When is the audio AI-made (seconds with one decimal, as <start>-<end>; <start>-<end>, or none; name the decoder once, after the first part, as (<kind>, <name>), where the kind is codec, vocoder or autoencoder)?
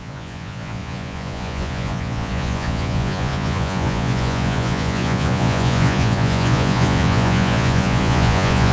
0.0-8.7 (vocoder, Vocos)